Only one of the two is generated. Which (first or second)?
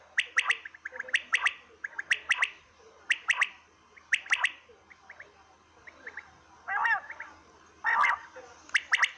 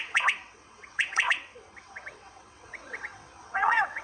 second